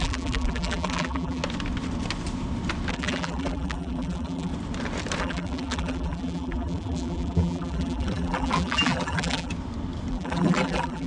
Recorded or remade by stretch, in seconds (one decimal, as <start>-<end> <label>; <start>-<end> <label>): 0.0-1.4 remade; 1.4-2.9 recorded; 2.9-4.5 remade; 4.5-5.2 recorded; 5.2-9.5 remade; 9.5-10.1 recorded; 10.1-11.1 remade